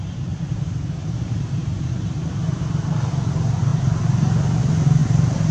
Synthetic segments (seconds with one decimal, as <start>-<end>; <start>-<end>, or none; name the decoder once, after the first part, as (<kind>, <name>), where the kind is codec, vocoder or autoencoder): 1.0-2.9 (vocoder, BigVGAN v2); 5.0-5.5